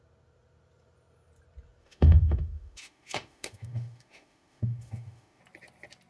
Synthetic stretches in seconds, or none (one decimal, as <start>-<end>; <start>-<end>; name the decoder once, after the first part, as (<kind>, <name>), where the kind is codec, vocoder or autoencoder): 1.8-5.4 (autoencoder, DAC-VAE)